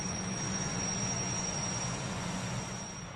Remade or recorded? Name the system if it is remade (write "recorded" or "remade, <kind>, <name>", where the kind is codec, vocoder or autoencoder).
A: remade, vocoder, Vocos